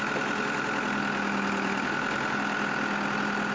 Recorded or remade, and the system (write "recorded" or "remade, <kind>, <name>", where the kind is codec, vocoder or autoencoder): recorded